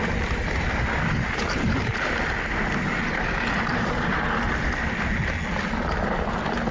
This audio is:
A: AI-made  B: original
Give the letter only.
B